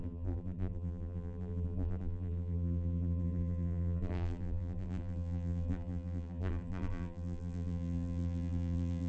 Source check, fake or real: fake